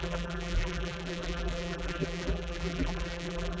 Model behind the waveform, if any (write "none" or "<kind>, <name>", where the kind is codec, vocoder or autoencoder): vocoder, BigVGAN v2